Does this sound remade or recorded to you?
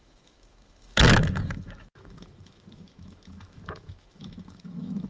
remade